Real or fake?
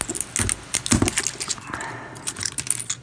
real